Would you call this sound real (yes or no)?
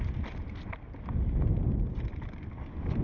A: yes